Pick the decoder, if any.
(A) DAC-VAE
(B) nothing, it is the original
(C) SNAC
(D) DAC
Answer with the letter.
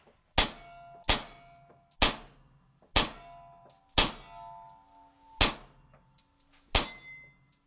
B